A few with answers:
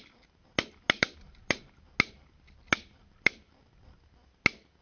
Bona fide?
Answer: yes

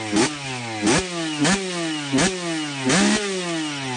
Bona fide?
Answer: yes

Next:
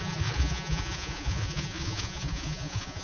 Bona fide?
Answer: no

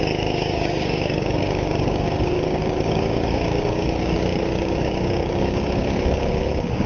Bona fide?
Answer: no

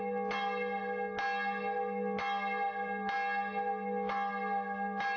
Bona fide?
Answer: yes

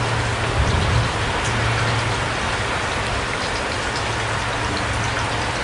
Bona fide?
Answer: yes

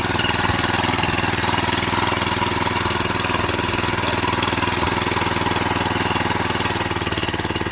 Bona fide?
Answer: yes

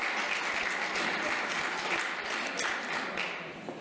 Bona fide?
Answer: yes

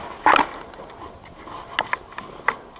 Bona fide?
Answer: yes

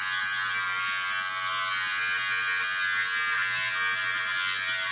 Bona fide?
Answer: yes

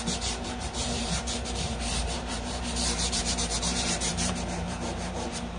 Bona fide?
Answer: no